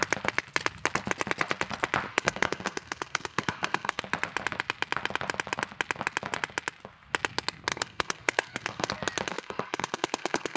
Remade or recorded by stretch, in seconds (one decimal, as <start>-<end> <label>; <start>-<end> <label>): 0.0-2.1 recorded; 2.1-4.0 remade; 4.0-7.7 recorded; 7.7-8.9 remade; 8.9-9.3 recorded; 9.3-10.6 remade